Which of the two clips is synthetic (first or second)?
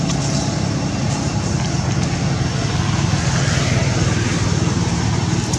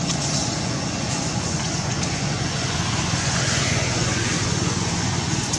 second